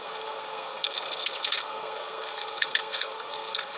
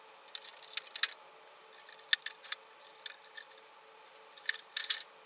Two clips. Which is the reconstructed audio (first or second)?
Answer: first